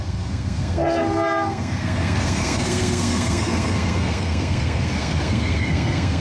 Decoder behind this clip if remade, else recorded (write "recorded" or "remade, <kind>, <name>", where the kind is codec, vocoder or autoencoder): remade, codec, SNAC